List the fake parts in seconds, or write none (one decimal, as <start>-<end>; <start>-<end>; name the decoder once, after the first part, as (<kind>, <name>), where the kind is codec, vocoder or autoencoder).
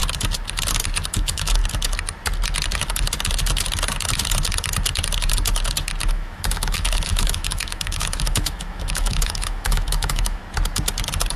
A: 1.1-1.6 (autoencoder, DAC-VAE); 6.1-10.4